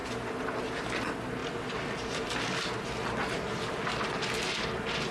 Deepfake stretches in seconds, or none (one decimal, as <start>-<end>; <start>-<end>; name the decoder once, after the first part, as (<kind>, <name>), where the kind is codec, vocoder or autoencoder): none